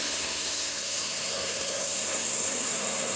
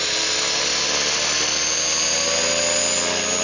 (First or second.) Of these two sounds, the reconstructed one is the first